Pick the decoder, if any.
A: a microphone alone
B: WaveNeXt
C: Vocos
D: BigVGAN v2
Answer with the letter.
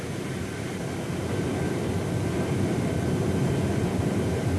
A